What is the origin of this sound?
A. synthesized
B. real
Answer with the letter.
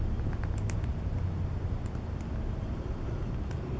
B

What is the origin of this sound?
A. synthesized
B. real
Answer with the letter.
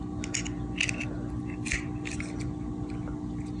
B